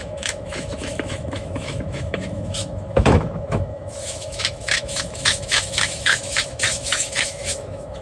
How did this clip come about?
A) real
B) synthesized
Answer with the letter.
B